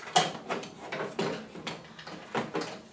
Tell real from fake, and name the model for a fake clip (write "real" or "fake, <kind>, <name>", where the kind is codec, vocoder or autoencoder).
real